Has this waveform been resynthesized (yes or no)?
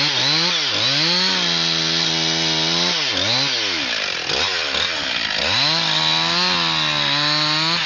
no